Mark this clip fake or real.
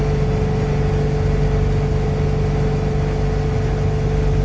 real